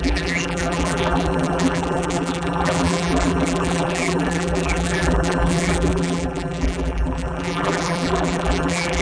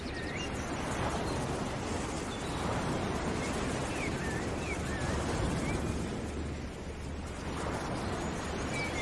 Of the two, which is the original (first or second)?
second